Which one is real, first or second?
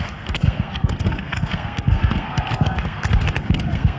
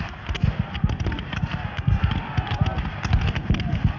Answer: second